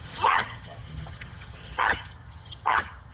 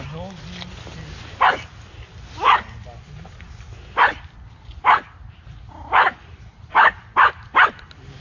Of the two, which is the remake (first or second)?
first